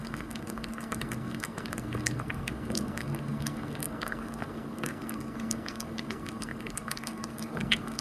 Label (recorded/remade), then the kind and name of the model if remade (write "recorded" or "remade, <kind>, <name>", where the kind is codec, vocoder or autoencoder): remade, codec, SNAC